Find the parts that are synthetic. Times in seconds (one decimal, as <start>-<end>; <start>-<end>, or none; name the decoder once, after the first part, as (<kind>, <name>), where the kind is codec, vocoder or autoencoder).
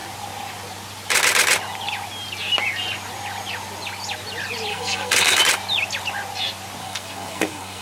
4.7-5.4 (codec, SNAC); 6.8-7.8